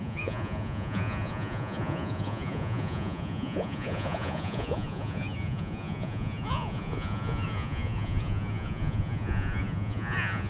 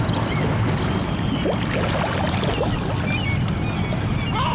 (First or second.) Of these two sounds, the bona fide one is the second